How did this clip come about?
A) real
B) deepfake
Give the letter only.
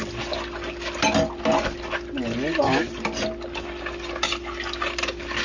A